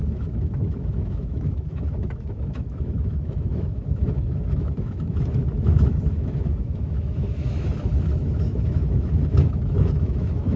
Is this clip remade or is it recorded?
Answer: remade